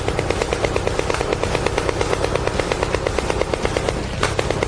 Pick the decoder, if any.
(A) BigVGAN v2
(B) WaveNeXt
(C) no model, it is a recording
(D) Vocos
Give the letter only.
C